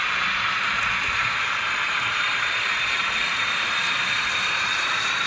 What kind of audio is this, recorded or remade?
remade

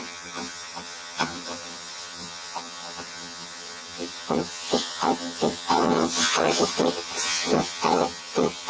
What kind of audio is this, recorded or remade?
remade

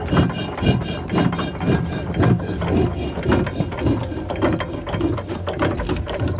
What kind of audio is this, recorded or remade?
recorded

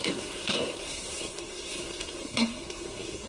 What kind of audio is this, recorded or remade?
remade